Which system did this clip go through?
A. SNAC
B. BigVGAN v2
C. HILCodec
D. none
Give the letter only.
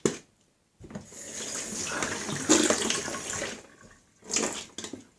D